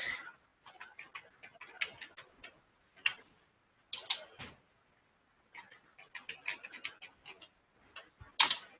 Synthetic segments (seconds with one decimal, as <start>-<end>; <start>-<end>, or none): none